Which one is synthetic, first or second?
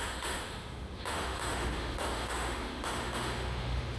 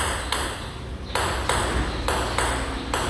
first